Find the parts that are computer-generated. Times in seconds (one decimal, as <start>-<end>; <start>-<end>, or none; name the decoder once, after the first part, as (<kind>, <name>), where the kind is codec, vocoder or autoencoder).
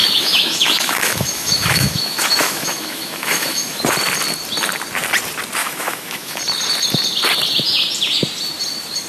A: 0.0-3.8 (autoencoder, DAC-VAE); 5.6-6.4